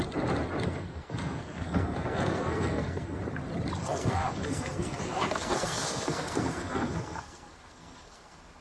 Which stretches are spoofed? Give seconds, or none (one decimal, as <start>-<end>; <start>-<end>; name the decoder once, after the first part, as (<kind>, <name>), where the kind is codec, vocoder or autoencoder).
0.7-3.2 (codec, SNAC); 3.8-8.6